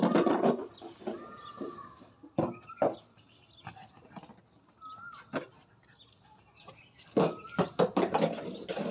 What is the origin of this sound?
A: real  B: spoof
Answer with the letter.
A